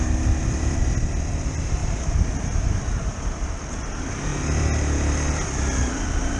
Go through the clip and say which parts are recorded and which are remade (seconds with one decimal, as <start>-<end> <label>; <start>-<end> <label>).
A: 0.0-1.8 recorded; 1.8-2.8 remade; 2.8-6.4 recorded

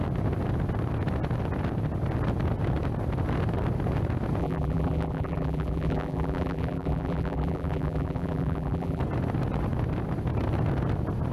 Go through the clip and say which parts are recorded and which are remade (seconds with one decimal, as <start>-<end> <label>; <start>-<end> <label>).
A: 0.0-4.4 recorded; 4.4-9.0 remade; 9.0-11.3 recorded

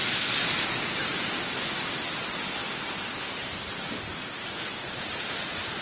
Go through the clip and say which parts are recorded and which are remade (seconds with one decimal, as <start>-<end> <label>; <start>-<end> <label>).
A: 0.0-2.6 recorded; 2.6-5.0 remade; 5.0-5.8 recorded

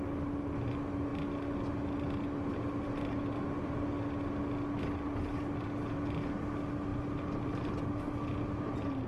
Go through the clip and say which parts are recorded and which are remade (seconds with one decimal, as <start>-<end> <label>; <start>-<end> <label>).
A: 0.0-9.1 recorded

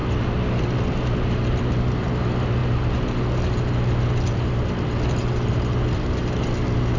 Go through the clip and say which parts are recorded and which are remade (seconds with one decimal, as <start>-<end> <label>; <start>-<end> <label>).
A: 0.0-7.0 recorded

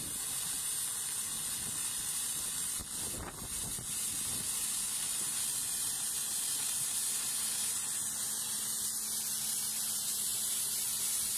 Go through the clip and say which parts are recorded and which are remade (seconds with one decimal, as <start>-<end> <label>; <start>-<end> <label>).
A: 0.0-10.3 recorded; 10.3-11.0 remade; 11.0-11.4 recorded